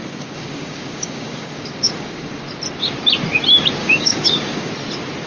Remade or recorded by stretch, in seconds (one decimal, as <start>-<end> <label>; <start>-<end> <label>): 0.0-2.4 remade; 2.4-3.8 recorded; 3.8-4.7 remade; 4.7-5.3 recorded